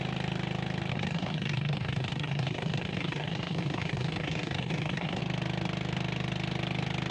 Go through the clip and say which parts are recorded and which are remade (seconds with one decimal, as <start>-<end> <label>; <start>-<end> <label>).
0.0-0.9 recorded; 0.9-5.2 remade; 5.2-7.1 recorded